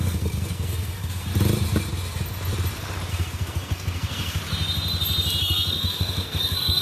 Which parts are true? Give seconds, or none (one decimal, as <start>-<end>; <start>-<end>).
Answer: 1.3-3.1; 4.4-5.4

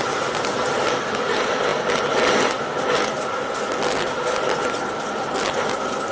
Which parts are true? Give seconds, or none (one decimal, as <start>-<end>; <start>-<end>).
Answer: 0.0-6.1